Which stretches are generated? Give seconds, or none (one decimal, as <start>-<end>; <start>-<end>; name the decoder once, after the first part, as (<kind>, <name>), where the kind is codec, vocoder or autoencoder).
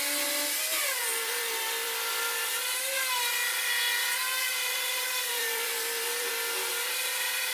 1.1-2.5 (vocoder, BigVGAN v2); 4.3-6.3; 6.7-7.5